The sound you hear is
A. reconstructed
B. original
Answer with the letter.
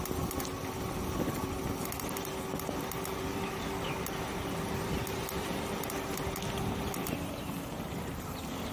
B